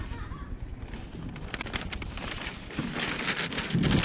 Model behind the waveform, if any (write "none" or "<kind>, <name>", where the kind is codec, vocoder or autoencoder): none